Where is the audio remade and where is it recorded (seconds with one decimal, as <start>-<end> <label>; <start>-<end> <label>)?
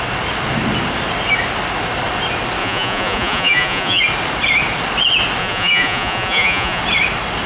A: 0.0-2.6 recorded; 2.6-4.0 remade; 4.0-5.4 recorded; 5.4-6.8 remade; 6.8-7.5 recorded